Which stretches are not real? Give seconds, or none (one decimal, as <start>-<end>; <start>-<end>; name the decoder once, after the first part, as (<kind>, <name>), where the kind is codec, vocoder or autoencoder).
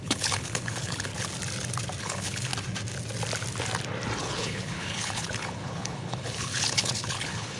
0.0-1.1 (codec, HILCodec); 2.0-2.5; 4.2-7.6